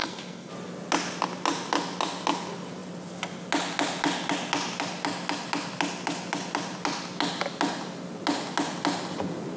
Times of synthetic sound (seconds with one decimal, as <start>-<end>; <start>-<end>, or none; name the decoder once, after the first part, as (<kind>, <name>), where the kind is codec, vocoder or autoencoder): 0.0-0.5 (codec, SNAC)

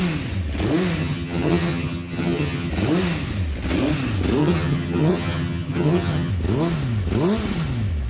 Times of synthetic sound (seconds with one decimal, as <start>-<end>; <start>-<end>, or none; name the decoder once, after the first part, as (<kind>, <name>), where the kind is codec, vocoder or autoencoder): 1.0-2.7 (vocoder, HiFi-GAN); 4.4-6.3